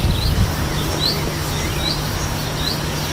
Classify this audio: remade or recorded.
recorded